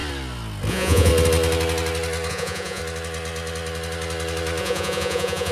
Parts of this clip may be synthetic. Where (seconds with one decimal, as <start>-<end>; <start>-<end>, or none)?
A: 0.7-1.1; 2.3-2.8; 4.6-5.5